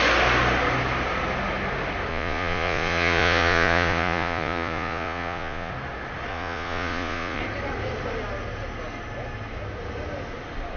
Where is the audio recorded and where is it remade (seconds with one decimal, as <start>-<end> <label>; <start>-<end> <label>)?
0.0-2.1 recorded; 2.1-5.7 remade; 5.7-6.3 recorded; 6.3-7.4 remade; 7.4-10.8 recorded